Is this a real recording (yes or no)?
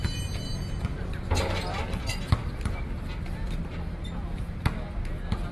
yes